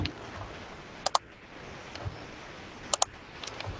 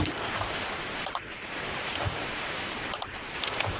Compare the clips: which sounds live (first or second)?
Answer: first